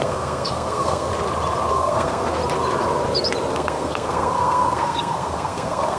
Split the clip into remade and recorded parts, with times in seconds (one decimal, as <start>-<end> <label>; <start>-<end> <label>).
0.0-1.1 remade; 1.1-1.7 recorded; 1.7-2.4 remade; 2.4-3.5 recorded; 3.5-6.0 remade